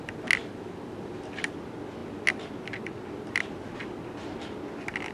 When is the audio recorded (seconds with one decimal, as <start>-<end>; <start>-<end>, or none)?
0.0-5.1

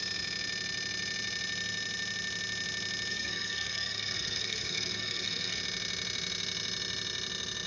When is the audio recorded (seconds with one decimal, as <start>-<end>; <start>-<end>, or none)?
0.0-3.1; 5.6-7.7

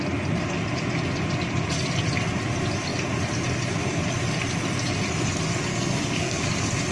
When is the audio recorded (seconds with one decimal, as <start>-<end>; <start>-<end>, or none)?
0.0-5.7; 6.4-6.9

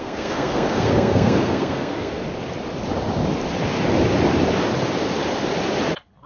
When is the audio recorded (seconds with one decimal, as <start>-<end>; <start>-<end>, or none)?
2.2-6.3

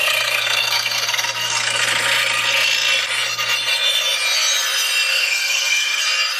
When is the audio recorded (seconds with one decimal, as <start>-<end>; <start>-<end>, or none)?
1.8-5.1; 6.0-6.4

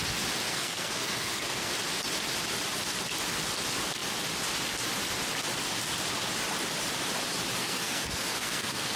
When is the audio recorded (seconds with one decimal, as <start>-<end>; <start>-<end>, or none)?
0.0-0.5; 1.7-7.6

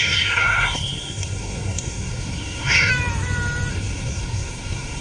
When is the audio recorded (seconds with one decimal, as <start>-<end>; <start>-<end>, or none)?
2.9-3.7

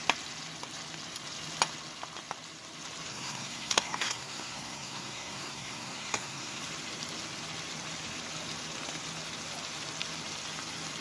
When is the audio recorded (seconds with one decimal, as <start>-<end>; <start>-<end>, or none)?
0.0-3.1; 6.6-11.0